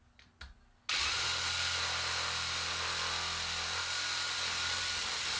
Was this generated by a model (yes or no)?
no